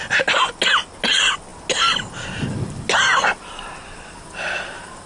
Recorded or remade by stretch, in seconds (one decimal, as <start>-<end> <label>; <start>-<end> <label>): 0.0-5.1 recorded